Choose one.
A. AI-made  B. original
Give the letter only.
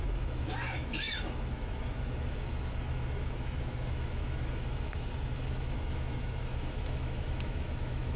A